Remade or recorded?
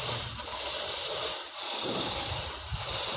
remade